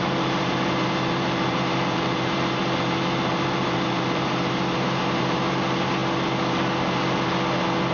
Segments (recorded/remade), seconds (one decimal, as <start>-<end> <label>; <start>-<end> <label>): 0.0-6.0 remade; 6.0-7.9 recorded